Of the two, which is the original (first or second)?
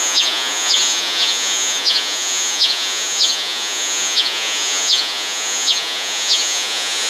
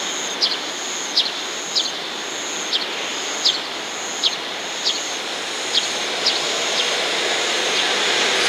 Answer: second